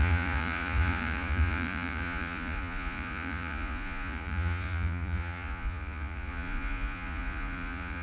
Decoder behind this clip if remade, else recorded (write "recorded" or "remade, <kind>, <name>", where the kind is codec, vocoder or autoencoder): remade, vocoder, Vocos